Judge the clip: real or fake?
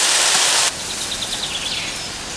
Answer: real